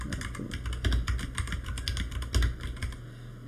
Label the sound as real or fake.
real